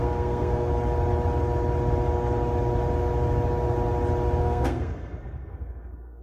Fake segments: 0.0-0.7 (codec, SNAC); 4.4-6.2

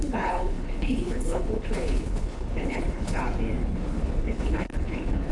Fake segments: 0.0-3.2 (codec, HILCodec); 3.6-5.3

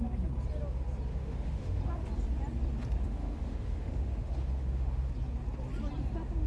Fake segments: 1.1-1.8 (autoencoder, DAC-VAE); 3.0-5.1